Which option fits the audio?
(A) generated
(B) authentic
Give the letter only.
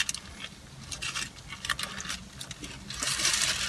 B